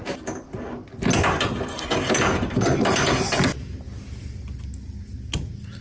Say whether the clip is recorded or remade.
recorded